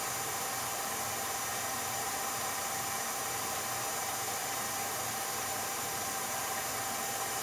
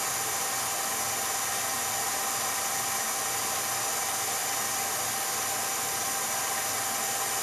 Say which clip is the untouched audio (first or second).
second